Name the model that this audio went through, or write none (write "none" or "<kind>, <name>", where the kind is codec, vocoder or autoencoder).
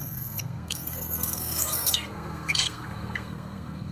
codec, SNAC